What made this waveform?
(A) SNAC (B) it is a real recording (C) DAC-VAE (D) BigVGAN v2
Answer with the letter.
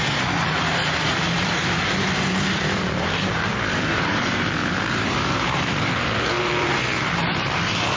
D